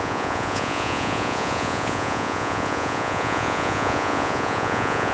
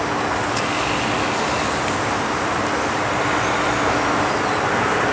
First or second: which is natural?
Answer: second